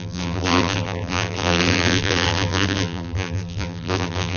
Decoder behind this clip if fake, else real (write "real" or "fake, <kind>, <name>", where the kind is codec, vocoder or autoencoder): fake, vocoder, BigVGAN v2